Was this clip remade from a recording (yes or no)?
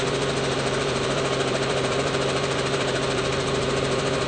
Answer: yes